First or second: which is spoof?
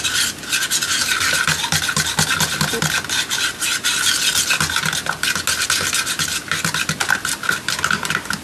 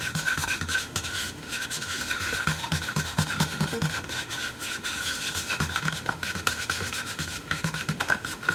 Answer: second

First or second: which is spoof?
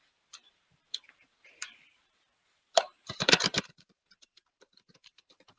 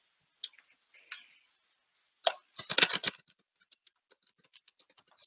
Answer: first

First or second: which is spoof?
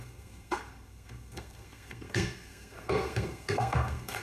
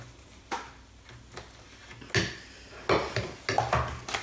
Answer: first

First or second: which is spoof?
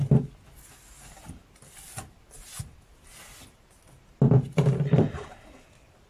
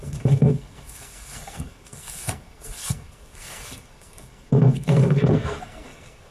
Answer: second